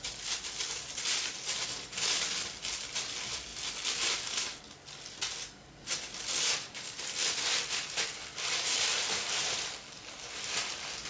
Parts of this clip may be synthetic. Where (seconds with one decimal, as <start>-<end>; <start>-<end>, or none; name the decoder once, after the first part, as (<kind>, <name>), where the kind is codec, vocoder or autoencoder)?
none